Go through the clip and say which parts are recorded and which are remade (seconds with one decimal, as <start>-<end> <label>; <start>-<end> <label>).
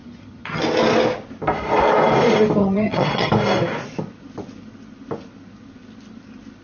0.0-0.6 remade; 0.6-2.6 recorded; 2.6-3.3 remade; 3.3-6.6 recorded